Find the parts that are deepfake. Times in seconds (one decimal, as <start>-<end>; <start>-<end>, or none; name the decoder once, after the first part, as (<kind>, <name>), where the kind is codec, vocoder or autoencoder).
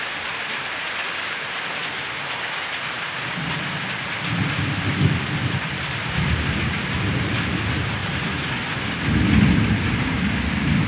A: 8.0-8.5 (vocoder, BigVGAN v2)